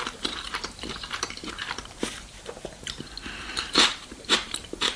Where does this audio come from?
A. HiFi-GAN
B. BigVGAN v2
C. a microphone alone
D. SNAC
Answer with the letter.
B